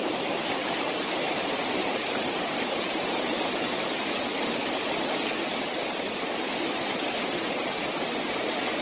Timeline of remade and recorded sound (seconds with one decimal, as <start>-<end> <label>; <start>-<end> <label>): 0.0-0.6 recorded; 0.6-4.2 remade; 4.2-8.8 recorded